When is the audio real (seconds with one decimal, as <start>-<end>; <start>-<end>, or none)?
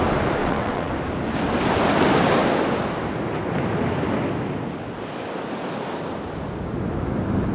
0.0-0.4; 0.9-7.5